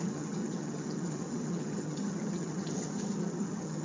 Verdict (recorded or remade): remade